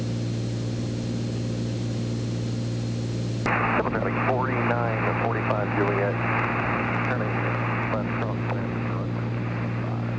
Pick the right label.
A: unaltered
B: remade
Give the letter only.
A